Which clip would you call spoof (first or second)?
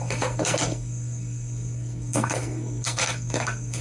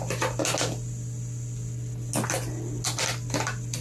first